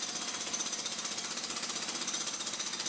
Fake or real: real